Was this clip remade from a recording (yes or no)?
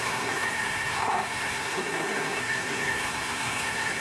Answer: yes